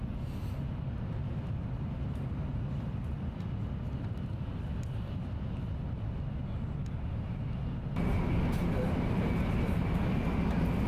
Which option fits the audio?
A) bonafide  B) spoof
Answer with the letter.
A